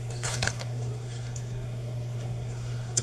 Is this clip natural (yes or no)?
no